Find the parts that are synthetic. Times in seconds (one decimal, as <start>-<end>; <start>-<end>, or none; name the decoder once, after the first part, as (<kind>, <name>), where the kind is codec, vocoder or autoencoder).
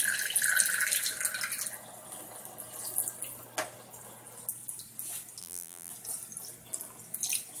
5.4-5.9 (vocoder, BigVGAN v2)